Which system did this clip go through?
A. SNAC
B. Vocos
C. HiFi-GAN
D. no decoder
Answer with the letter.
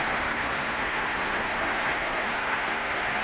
A